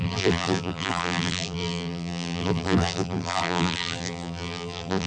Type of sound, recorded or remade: remade